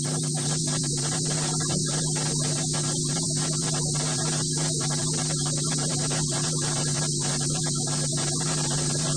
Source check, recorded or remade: remade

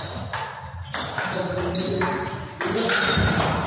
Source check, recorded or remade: recorded